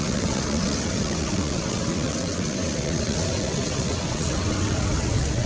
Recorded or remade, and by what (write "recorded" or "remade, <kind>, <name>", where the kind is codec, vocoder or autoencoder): remade, vocoder, WaveNeXt